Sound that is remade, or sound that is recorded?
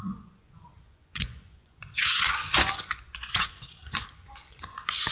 remade